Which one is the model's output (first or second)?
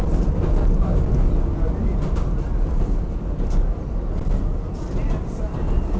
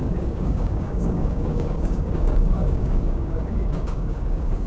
second